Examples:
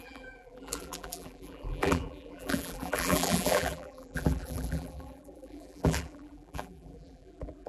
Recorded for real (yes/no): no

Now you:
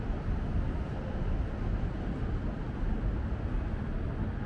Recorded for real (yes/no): yes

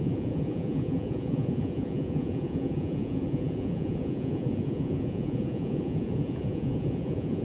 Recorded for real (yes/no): no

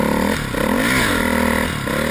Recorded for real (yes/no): yes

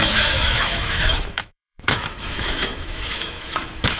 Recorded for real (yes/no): no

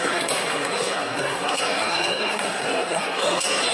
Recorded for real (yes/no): no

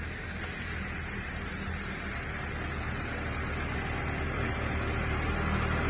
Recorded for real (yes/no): yes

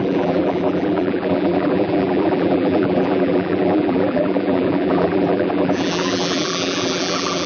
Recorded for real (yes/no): no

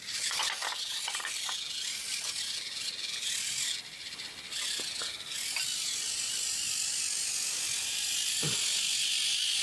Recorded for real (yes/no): yes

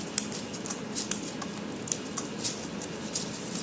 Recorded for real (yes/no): yes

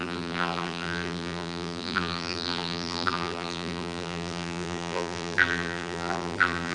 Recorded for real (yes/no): no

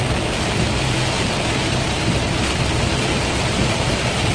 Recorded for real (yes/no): yes